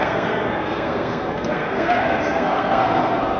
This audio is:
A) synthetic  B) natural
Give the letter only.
A